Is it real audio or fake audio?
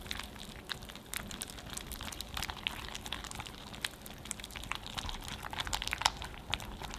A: real